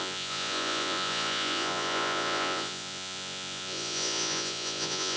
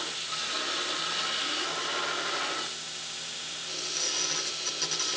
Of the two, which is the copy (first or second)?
first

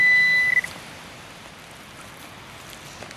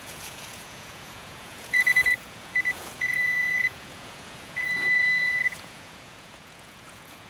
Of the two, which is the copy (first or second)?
second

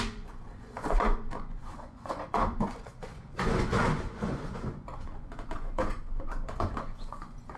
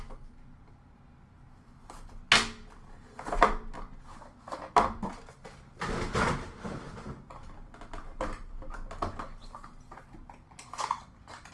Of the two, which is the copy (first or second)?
first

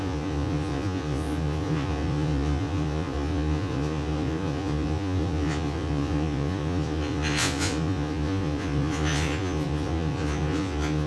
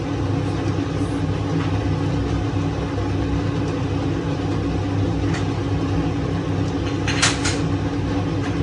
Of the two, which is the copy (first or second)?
first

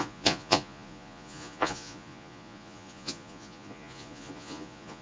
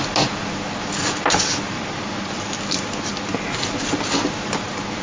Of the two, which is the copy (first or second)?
first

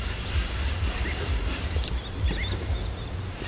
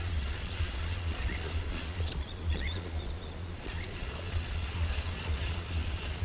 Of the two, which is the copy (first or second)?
second